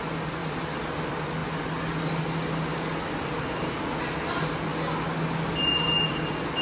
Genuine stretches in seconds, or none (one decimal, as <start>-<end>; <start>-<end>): 0.0-6.6